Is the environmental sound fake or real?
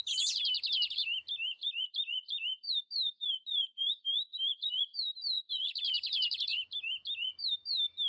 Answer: fake